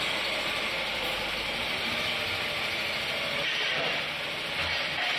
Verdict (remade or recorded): recorded